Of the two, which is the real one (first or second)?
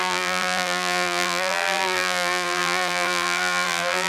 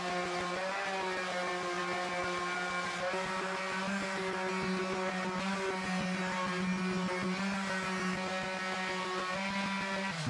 second